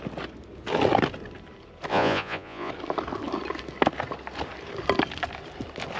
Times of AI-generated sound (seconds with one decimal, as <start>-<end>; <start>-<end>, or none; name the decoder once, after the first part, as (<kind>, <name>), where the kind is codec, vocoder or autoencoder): 1.9-2.7 (vocoder, Vocos)